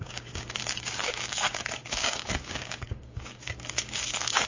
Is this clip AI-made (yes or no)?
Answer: yes